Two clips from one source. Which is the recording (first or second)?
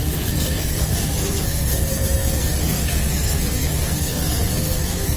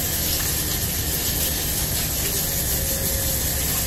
second